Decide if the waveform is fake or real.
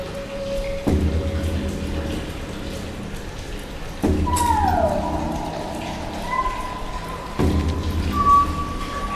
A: real